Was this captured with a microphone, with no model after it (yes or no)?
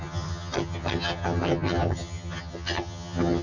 no